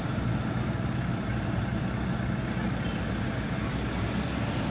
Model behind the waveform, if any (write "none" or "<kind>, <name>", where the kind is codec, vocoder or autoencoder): none